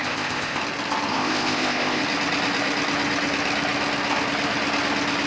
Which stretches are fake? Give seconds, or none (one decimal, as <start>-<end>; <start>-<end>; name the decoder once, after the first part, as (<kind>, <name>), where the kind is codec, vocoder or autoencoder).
0.0-0.6 (codec, ZipCodec); 1.1-2.0